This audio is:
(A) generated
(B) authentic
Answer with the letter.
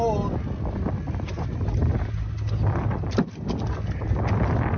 B